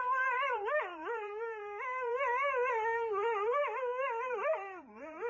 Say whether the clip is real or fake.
fake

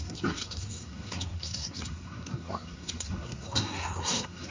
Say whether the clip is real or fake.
fake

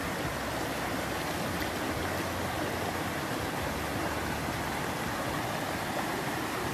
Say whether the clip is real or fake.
real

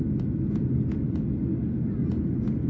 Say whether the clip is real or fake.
real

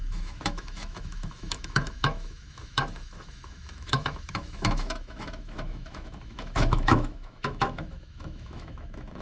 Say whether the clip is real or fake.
fake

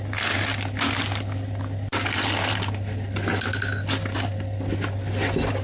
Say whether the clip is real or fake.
real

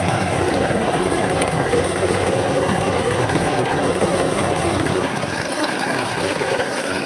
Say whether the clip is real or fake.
fake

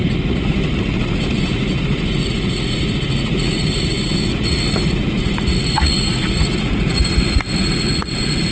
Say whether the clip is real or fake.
fake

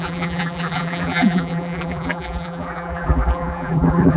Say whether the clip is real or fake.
fake